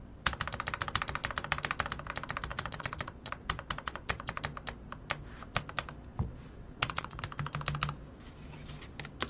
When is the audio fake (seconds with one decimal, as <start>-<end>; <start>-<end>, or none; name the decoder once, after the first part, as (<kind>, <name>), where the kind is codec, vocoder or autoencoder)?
2.5-4.4 (vocoder, Vocos); 6.1-7.2